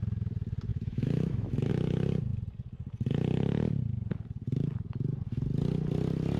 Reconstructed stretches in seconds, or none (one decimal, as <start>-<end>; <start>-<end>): 0.7-1.7